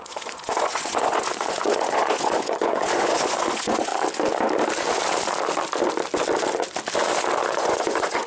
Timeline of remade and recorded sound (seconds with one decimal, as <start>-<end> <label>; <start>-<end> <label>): 0.0-3.9 remade; 3.9-7.5 recorded; 7.5-8.3 remade